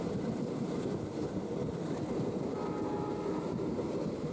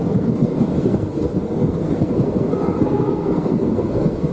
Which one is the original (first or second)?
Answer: first